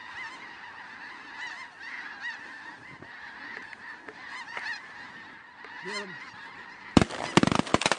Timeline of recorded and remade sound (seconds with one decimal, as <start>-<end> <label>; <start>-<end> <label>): 0.0-8.0 recorded